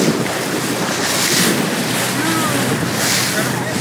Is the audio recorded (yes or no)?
yes